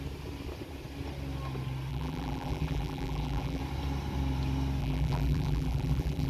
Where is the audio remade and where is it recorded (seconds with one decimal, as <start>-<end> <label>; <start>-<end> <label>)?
0.0-1.9 recorded; 1.9-3.6 remade; 3.6-4.8 recorded; 4.8-6.3 remade